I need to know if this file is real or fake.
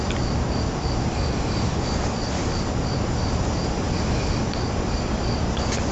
real